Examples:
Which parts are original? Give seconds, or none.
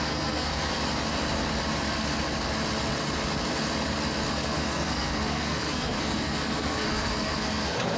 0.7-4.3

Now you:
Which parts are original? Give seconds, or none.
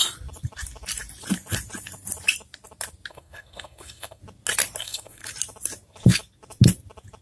0.0-3.1; 4.2-4.8; 5.2-7.2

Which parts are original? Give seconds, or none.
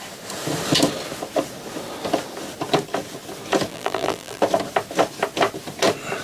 0.0-3.7; 4.4-6.2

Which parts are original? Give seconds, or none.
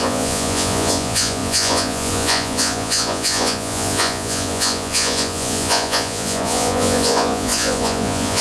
none